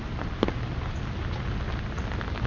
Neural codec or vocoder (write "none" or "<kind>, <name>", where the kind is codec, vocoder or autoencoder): none